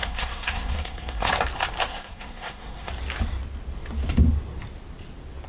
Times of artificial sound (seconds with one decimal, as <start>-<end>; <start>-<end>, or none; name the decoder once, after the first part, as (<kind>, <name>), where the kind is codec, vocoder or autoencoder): 0.0-1.3 (codec, SNAC); 1.9-2.9